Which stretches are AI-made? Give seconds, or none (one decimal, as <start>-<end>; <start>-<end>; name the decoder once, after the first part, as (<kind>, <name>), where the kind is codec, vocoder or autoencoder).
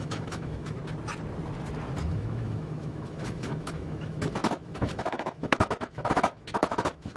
0.0-0.8 (autoencoder, DAC-VAE); 2.0-7.2